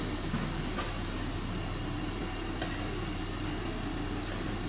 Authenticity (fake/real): real